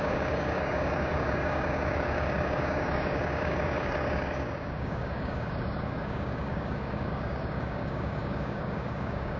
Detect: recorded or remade remade